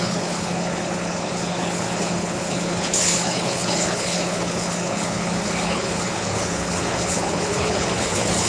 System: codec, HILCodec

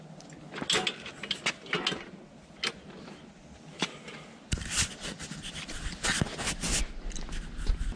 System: none